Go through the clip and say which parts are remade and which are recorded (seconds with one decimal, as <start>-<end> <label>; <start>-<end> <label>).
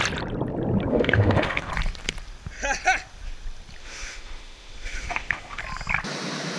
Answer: 0.0-0.9 recorded; 0.9-1.7 remade; 1.7-3.8 recorded; 3.8-5.6 remade; 5.6-6.6 recorded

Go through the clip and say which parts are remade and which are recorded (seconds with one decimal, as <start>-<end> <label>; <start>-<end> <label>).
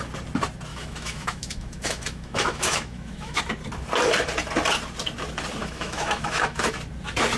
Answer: 0.0-0.7 recorded; 0.7-3.4 remade; 3.4-5.6 recorded; 5.6-6.7 remade; 6.7-7.4 recorded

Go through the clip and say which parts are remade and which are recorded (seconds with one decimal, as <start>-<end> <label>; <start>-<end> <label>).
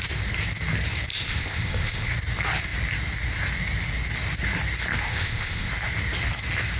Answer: 0.0-1.1 recorded; 1.1-2.1 remade; 2.1-5.1 recorded; 5.1-5.7 remade; 5.7-6.8 recorded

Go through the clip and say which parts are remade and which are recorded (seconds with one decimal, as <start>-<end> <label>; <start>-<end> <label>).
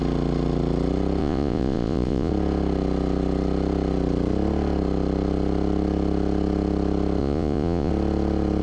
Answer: 0.0-1.2 recorded; 1.2-2.3 remade; 2.3-7.2 recorded; 7.2-7.9 remade; 7.9-8.6 recorded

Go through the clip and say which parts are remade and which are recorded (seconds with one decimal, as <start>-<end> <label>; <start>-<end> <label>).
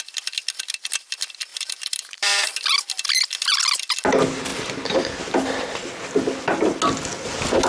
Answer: 0.0-1.5 recorded; 1.5-3.6 remade; 3.6-7.7 recorded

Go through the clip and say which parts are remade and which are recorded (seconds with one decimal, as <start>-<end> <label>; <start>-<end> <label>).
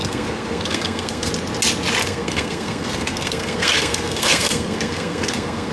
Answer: 0.0-1.3 remade; 1.3-2.0 recorded; 2.0-5.7 remade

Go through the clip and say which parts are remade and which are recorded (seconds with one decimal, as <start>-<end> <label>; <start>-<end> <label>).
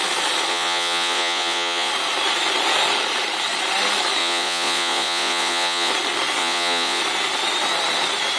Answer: 0.0-0.5 recorded; 0.5-1.9 remade; 1.9-4.2 recorded; 4.2-5.9 remade; 5.9-6.4 recorded; 6.4-7.0 remade; 7.0-8.4 recorded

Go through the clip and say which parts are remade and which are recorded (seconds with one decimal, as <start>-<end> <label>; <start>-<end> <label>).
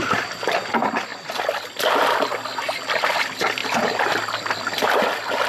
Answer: 0.0-3.6 recorded; 3.6-4.6 remade; 4.6-5.5 recorded